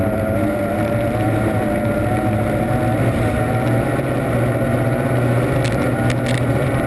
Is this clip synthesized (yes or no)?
no